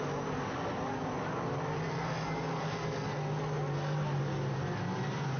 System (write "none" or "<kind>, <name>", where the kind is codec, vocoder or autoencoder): none